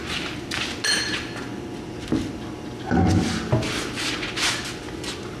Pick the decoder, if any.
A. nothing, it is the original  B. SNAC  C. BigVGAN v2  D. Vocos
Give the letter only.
A